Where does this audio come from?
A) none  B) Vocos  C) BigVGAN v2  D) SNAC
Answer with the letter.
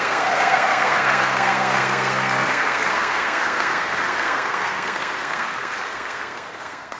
D